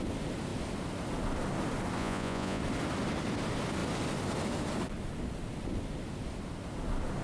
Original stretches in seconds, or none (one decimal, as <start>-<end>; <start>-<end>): 0.0-2.0; 2.6-7.2